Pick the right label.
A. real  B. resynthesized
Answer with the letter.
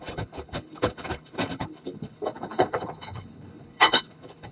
B